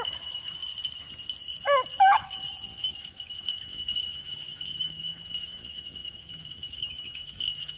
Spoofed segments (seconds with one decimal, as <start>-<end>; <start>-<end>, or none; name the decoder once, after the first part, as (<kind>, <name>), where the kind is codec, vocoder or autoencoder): 0.0-0.6 (autoencoder, DAC-VAE); 2.8-7.8

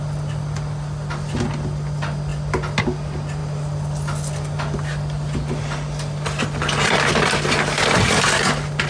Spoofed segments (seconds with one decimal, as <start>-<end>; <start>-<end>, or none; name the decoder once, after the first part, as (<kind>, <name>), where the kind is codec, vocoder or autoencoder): none